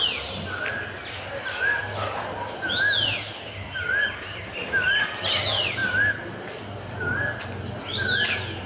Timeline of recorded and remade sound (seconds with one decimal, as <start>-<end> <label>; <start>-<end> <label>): 0.0-8.7 recorded